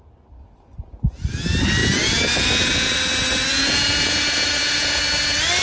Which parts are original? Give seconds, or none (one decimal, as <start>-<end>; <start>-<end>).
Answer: 0.0-1.8; 2.9-3.5; 5.0-5.6